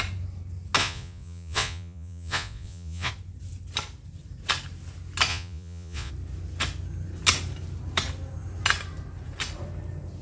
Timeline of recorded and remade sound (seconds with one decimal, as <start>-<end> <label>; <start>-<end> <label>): 0.0-0.8 recorded; 0.8-3.1 remade; 3.1-5.3 recorded; 5.3-6.1 remade; 6.1-10.2 recorded